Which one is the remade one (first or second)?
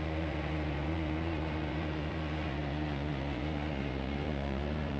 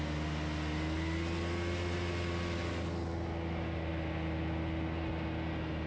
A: first